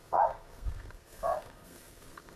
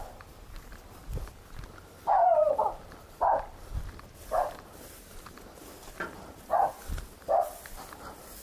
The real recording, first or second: second